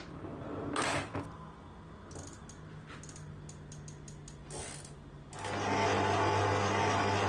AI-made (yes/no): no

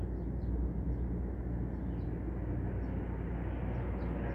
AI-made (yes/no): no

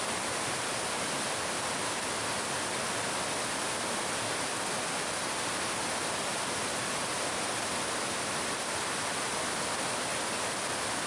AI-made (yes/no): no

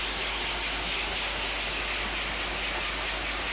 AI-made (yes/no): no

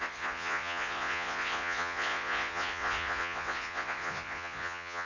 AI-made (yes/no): yes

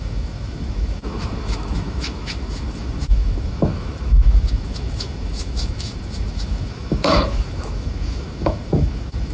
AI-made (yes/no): yes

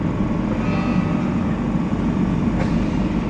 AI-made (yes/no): no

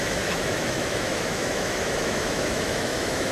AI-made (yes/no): yes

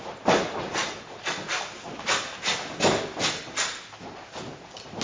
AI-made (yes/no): no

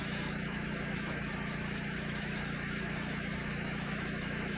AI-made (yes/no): yes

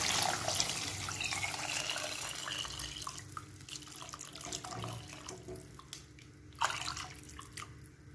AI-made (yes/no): no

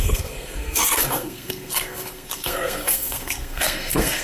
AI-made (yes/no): yes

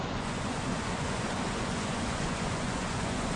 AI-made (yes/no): yes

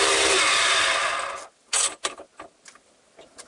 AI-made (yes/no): no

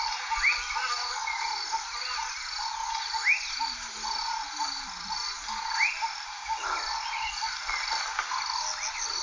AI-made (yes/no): no